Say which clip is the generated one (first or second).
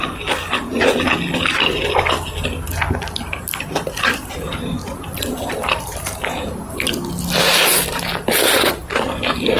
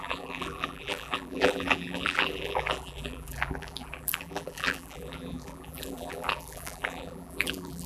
second